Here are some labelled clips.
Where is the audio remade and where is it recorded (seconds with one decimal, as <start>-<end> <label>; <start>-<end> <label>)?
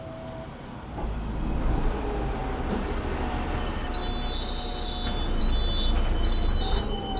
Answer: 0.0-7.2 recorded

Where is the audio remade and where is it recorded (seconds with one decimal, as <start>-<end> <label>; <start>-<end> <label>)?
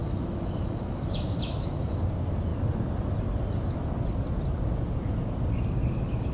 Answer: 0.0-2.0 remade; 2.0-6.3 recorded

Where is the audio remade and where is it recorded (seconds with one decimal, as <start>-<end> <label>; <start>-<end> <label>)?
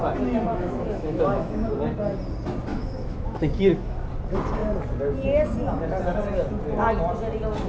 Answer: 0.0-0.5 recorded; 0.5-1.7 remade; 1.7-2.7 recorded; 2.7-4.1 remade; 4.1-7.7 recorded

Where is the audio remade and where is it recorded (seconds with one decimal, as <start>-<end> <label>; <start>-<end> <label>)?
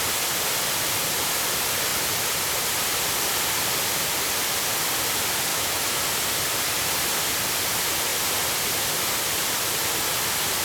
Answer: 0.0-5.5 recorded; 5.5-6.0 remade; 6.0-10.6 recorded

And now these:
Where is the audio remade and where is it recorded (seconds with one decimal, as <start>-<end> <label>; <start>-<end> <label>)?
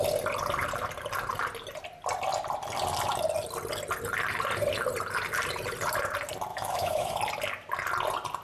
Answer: 0.0-6.5 recorded; 6.5-7.2 remade; 7.2-8.4 recorded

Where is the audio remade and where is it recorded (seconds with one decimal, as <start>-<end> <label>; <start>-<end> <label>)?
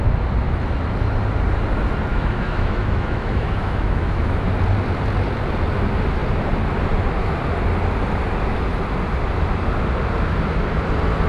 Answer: 0.0-2.1 recorded; 2.1-4.5 remade; 4.5-11.3 recorded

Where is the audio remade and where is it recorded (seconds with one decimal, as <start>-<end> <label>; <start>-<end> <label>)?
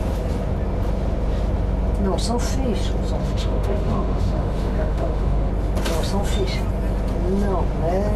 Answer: 0.0-3.2 recorded; 3.2-5.5 remade; 5.5-8.2 recorded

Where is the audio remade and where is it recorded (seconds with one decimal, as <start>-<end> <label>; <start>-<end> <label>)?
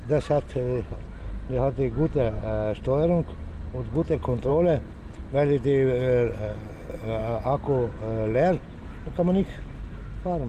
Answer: 0.0-10.5 recorded